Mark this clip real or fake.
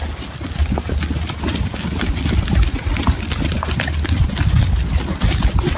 real